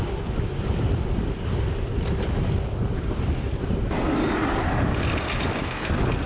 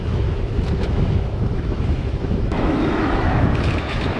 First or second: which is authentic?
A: first